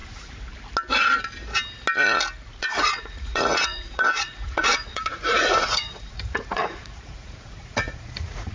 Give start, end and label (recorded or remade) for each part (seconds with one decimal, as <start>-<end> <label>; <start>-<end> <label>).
0.0-2.6 recorded; 2.6-8.5 remade